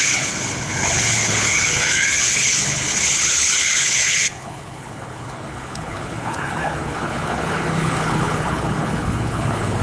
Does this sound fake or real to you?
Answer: fake